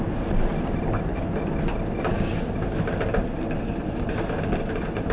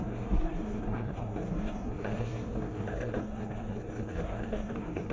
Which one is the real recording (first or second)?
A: first